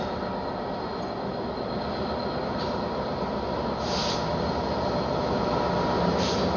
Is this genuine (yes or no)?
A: yes